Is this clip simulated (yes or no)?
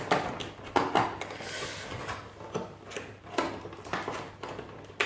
no